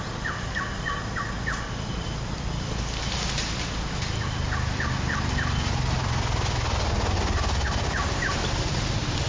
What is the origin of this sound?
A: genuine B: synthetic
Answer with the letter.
A